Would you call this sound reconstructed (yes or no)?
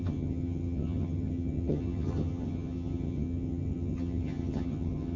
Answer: yes